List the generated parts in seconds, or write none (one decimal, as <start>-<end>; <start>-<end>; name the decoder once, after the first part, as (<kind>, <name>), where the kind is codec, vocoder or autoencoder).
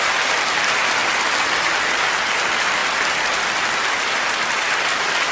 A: none